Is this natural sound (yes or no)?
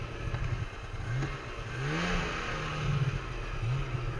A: yes